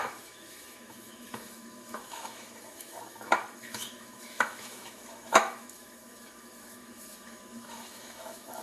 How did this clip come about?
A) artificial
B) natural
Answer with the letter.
A